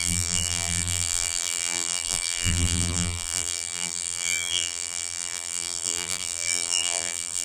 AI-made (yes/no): yes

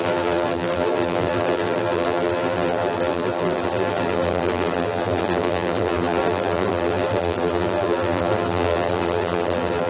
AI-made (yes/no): yes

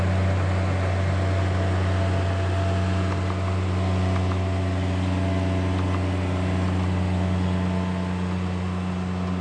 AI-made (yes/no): no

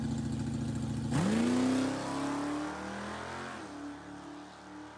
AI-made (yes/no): no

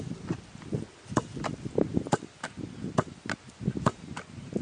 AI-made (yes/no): no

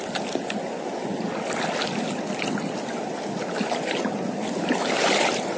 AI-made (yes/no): no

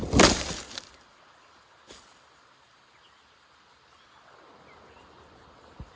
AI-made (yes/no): no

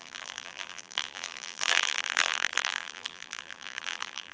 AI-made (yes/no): yes